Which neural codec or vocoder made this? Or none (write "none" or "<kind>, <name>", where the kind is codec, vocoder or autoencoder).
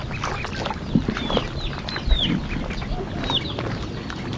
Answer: none